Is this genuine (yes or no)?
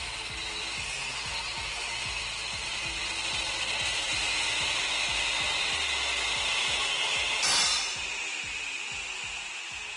yes